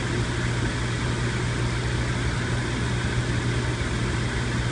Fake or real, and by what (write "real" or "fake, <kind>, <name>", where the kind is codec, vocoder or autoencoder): real